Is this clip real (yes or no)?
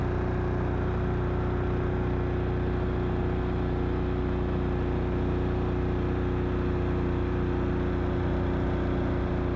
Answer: yes